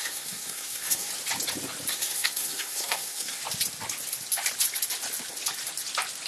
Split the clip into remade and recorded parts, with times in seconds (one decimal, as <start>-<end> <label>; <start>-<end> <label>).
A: 0.0-1.1 remade; 1.1-1.9 recorded; 1.9-3.4 remade; 3.4-6.3 recorded